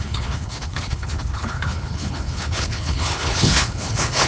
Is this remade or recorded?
remade